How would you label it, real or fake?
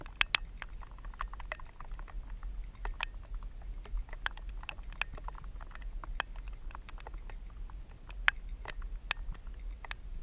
real